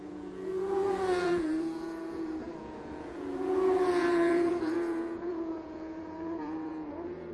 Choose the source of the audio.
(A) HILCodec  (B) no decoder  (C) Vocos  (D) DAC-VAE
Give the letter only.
C